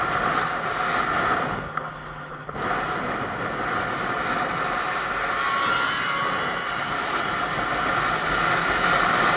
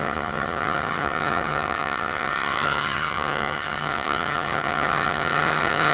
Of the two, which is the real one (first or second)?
first